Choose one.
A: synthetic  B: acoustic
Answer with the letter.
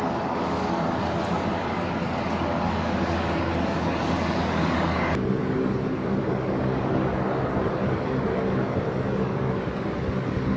A